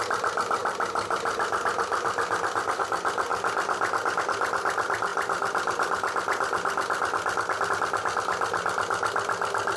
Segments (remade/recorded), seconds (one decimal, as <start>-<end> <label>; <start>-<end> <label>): 0.0-9.8 recorded